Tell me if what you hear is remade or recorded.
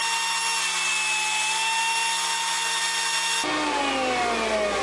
recorded